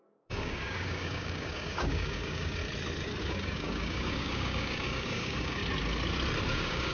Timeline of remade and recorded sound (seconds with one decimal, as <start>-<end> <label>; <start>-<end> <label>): 0.0-2.6 remade; 2.6-3.2 recorded; 3.2-5.6 remade; 5.6-6.5 recorded; 6.5-6.9 remade